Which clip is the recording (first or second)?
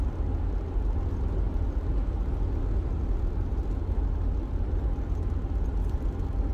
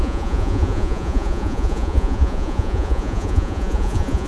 first